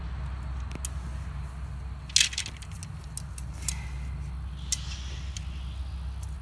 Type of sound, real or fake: real